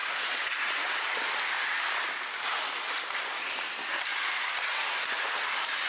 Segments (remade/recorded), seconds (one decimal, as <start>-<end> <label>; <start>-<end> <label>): 0.0-4.1 recorded; 4.1-5.5 remade; 5.5-5.9 recorded

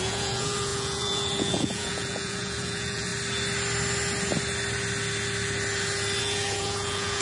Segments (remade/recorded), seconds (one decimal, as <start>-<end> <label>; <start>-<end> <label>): 0.0-3.1 remade; 3.1-6.2 recorded; 6.2-7.2 remade

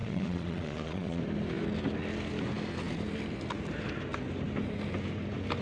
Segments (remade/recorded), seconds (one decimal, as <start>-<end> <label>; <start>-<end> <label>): 0.0-1.2 remade; 1.2-5.6 recorded